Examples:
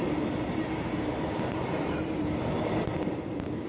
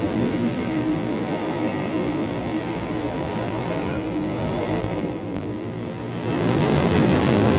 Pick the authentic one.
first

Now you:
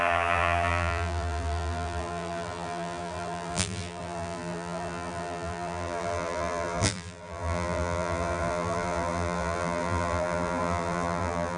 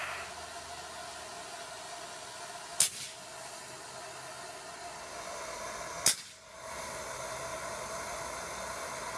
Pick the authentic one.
second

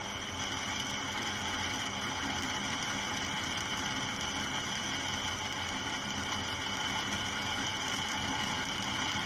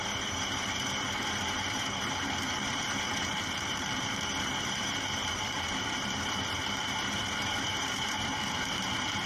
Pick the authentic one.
first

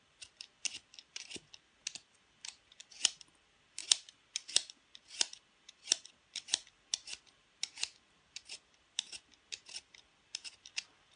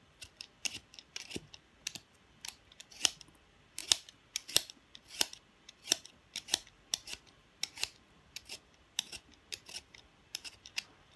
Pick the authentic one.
first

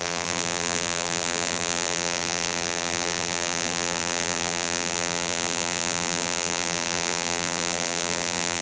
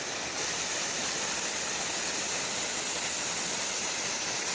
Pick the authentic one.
second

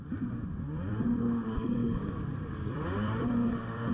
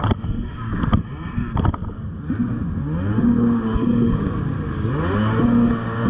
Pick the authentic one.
second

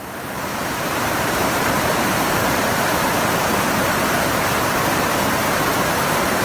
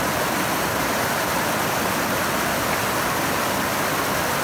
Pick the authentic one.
second